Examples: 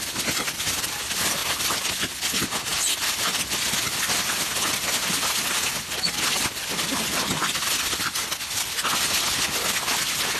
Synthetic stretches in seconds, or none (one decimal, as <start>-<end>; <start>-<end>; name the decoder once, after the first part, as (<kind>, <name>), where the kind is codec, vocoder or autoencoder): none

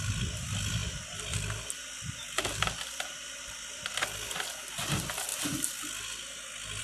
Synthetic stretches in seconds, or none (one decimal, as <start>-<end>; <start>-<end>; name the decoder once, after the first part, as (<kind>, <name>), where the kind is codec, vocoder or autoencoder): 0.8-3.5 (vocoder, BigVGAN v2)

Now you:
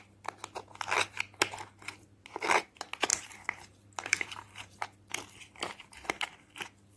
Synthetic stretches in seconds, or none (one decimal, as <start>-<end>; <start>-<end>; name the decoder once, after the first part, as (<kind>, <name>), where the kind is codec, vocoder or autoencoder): 3.1-4.8 (vocoder, BigVGAN v2)